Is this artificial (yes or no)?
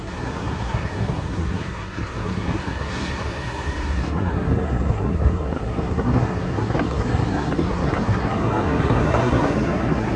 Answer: yes